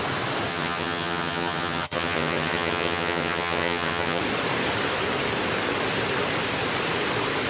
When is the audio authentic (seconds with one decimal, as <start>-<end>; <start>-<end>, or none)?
0.0-0.5; 4.2-7.5